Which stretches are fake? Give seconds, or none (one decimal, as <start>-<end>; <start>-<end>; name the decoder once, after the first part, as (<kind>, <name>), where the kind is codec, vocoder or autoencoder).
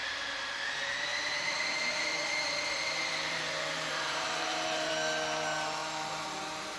1.1-4.9 (vocoder, BigVGAN v2)